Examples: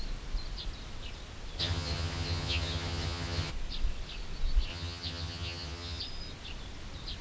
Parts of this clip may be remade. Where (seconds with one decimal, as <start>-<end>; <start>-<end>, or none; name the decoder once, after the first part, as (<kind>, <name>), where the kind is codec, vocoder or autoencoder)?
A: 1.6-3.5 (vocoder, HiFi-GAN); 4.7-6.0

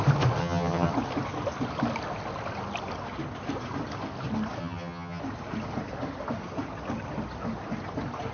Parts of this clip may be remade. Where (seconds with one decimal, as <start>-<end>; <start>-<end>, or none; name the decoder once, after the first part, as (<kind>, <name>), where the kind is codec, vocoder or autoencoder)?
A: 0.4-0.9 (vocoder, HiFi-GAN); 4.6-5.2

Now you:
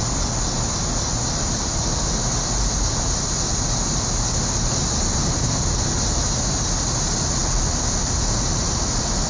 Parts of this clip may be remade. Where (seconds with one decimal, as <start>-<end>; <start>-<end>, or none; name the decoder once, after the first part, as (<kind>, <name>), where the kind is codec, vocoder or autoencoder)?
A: none

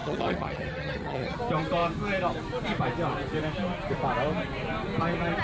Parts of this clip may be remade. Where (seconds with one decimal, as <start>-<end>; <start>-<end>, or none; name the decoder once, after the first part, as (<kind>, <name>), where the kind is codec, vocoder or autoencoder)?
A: 0.0-1.4 (vocoder, HiFi-GAN)

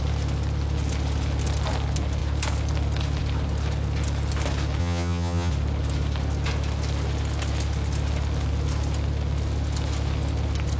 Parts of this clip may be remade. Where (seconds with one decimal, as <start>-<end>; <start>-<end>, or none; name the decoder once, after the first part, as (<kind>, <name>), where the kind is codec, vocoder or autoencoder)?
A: 4.8-5.5 (vocoder, HiFi-GAN)